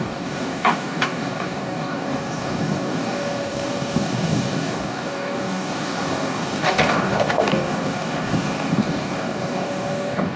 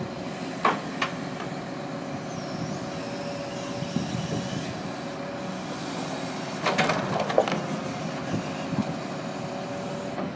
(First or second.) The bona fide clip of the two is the second